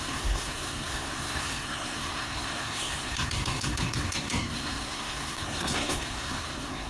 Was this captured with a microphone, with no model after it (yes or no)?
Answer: no